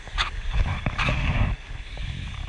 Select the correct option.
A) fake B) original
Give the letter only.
A